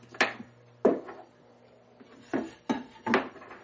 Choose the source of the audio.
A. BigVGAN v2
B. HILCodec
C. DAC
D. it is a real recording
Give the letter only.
D